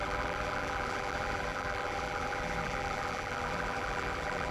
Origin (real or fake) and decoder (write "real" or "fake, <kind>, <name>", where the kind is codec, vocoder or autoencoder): fake, vocoder, BigVGAN v2